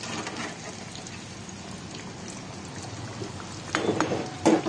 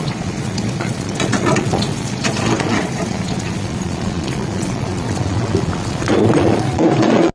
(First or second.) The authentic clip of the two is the first